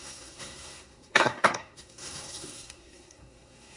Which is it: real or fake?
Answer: fake